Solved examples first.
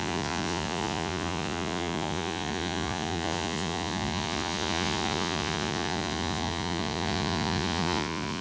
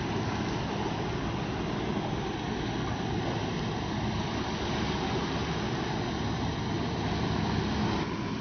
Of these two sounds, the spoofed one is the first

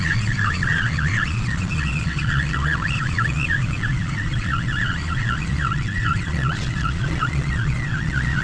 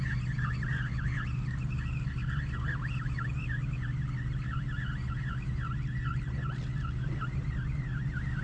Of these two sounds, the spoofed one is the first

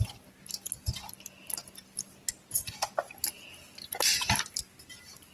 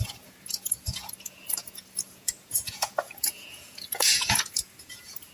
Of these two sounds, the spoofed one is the second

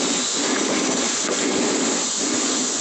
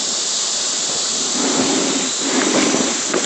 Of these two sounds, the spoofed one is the first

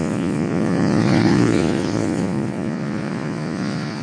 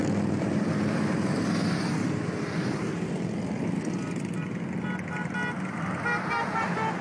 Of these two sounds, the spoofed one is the first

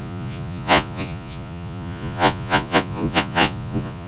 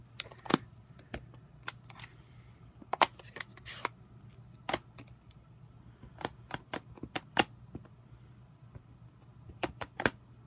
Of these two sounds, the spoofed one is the first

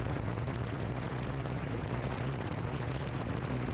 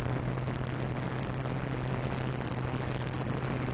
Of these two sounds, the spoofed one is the first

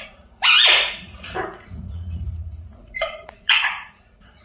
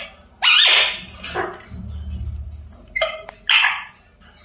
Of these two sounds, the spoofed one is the first